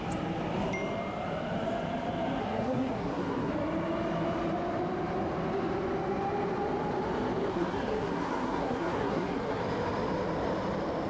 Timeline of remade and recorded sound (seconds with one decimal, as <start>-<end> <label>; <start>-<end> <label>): 0.0-2.4 recorded; 2.4-3.5 remade; 3.5-7.5 recorded; 7.5-9.6 remade; 9.6-11.1 recorded